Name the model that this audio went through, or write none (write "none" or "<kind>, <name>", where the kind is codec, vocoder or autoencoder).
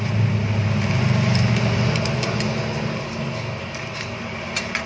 none